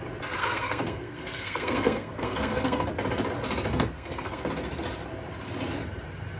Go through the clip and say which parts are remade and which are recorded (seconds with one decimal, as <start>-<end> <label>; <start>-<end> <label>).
0.0-0.4 recorded; 0.4-2.9 remade; 2.9-3.7 recorded; 3.7-4.5 remade; 4.5-6.4 recorded